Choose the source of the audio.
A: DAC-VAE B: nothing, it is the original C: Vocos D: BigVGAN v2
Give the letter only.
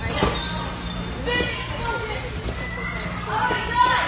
B